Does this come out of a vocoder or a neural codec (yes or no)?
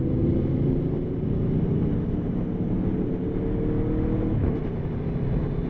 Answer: no